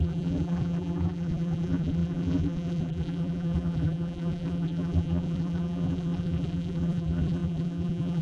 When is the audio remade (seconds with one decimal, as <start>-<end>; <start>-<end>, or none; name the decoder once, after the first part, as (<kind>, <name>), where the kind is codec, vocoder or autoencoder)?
0.0-8.2 (vocoder, BigVGAN v2)